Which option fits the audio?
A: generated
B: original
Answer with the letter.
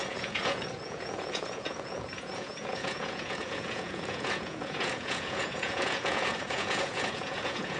A